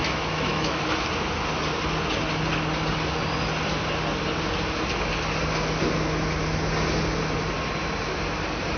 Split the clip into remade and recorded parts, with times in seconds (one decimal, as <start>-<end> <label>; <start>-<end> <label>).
0.0-0.8 remade; 0.8-8.8 recorded